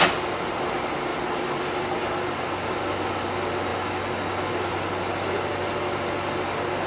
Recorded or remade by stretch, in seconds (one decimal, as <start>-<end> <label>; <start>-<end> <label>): 0.0-6.9 recorded